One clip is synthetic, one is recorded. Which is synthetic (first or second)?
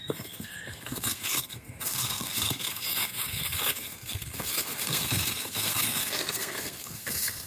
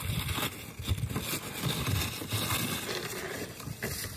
first